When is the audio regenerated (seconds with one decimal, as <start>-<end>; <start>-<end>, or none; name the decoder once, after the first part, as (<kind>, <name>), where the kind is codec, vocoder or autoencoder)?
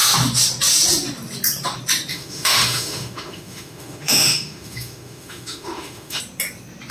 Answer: 2.1-6.2 (autoencoder, DAC-VAE)